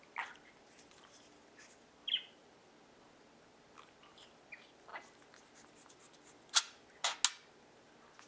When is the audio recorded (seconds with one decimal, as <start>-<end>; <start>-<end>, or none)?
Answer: 0.0-8.3